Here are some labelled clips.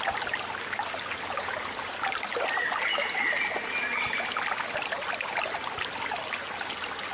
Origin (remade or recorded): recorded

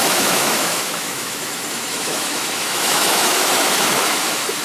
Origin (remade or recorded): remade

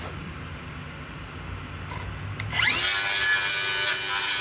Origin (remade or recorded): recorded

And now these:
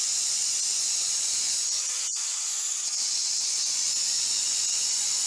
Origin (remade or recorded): remade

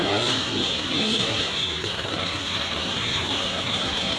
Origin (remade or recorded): remade